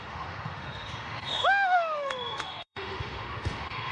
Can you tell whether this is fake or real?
fake